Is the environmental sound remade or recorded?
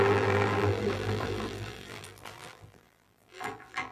remade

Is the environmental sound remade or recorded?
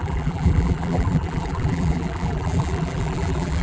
remade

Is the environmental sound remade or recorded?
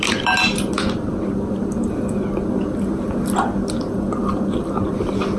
recorded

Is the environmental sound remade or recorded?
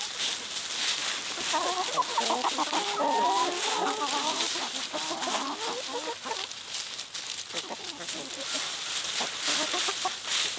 recorded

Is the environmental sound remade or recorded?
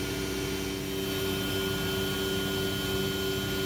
recorded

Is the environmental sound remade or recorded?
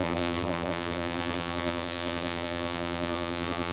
remade